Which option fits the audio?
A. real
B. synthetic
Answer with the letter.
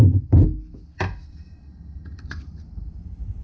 A